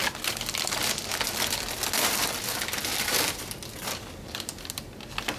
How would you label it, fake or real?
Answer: real